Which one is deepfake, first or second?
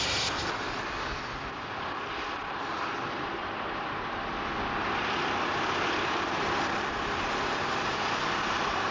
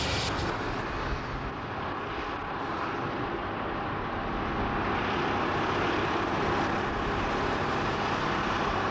first